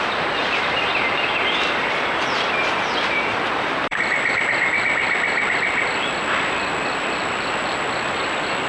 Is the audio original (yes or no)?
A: no